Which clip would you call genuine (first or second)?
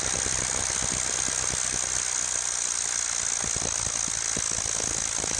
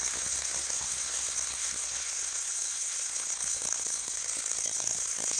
first